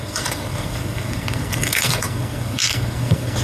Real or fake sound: fake